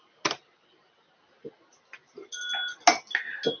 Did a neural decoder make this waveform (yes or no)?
no